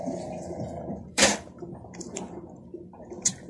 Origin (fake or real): fake